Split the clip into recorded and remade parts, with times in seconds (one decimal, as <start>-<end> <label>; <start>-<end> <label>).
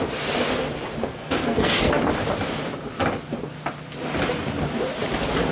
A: 0.0-1.0 recorded; 1.0-2.0 remade; 2.0-5.5 recorded